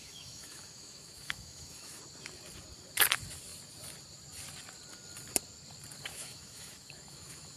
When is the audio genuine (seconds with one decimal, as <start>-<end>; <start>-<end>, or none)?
2.0-6.1